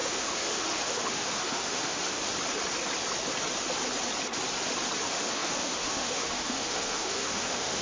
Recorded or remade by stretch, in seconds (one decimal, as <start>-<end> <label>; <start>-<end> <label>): 0.0-2.2 remade; 2.2-5.0 recorded; 5.0-7.8 remade